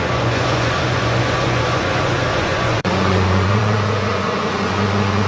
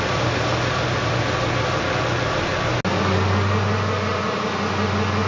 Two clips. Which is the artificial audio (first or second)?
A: first